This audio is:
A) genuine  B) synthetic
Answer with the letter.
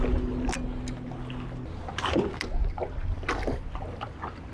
A